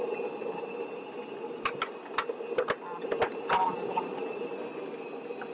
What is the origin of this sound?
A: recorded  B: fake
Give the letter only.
A